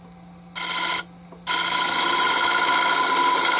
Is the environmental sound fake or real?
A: real